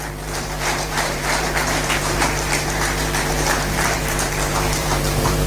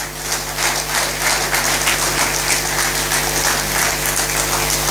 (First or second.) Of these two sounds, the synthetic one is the first